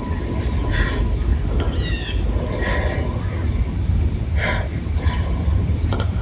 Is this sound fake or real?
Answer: real